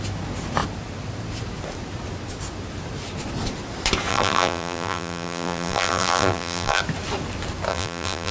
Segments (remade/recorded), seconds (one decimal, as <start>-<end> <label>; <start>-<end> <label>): 0.0-4.1 recorded; 4.1-6.8 remade; 6.8-7.7 recorded; 7.7-8.3 remade